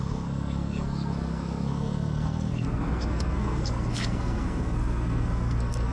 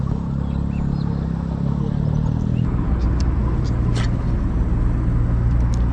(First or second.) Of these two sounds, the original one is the second